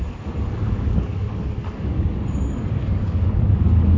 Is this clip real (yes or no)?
no